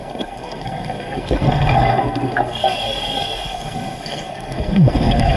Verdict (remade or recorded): remade